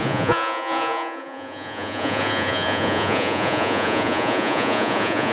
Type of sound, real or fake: fake